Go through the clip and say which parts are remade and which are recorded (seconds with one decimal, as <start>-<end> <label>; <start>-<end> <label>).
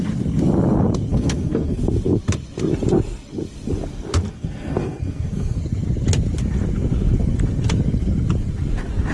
0.0-1.1 recorded; 1.1-1.8 remade; 1.8-4.3 recorded; 4.3-5.6 remade; 5.6-9.1 recorded